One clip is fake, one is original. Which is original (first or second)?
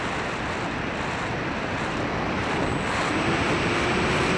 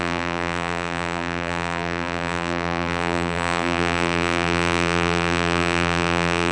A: first